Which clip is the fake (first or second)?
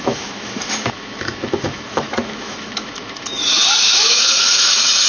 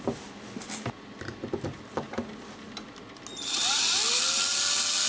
first